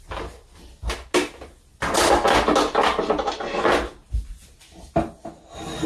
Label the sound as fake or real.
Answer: real